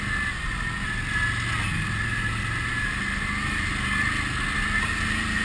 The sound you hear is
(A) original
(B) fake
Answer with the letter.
A